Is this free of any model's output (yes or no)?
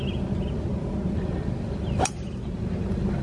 yes